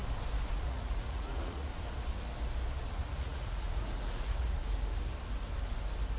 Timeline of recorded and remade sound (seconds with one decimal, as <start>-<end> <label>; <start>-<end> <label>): 0.0-0.5 recorded; 0.5-1.7 remade; 1.7-2.9 recorded; 2.9-4.6 remade; 4.6-6.2 recorded